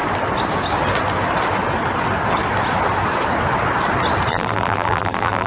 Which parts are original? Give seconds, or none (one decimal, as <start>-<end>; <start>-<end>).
0.0-4.3